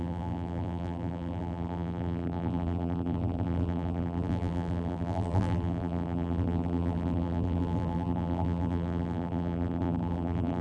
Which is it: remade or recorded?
remade